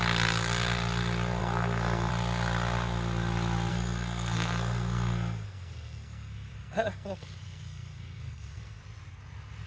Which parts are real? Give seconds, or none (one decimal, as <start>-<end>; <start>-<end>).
0.0-1.4; 2.1-3.7; 8.8-9.7